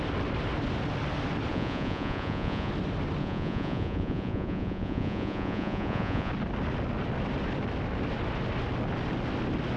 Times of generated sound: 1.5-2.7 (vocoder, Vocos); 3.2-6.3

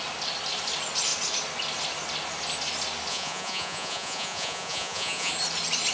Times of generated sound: 3.1-5.3 (vocoder, Vocos)

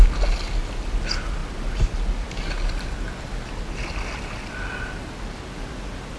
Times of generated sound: none

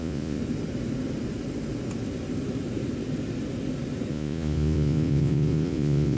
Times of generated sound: 0.0-0.4 (vocoder, Vocos); 4.1-6.2

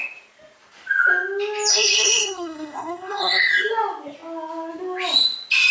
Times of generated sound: 1.7-3.7 (codec, SNAC)

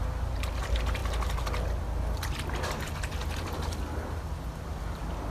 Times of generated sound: none